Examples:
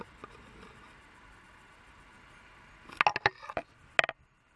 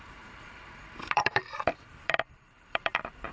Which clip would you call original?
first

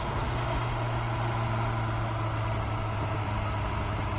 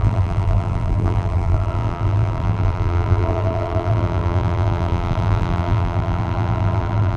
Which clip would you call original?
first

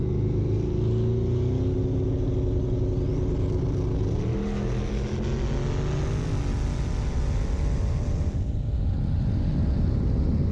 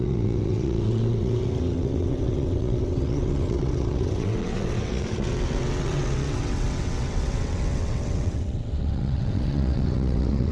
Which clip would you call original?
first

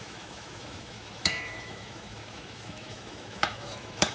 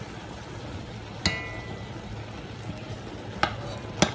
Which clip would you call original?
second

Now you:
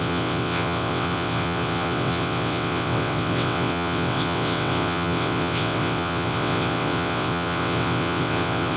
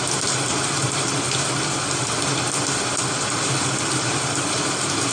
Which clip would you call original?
second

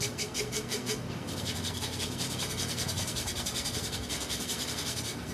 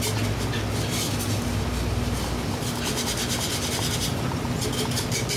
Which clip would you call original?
second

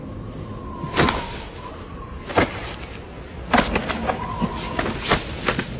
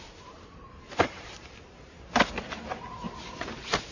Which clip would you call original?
first